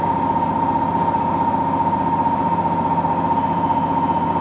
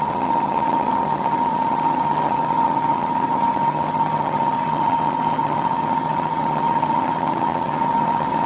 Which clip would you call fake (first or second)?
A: second